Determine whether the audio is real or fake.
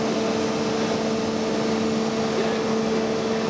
real